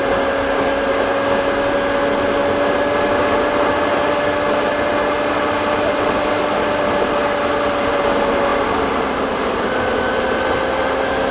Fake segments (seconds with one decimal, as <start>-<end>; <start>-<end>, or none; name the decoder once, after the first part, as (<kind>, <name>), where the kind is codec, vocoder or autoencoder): 0.9-1.7 (codec, DAC)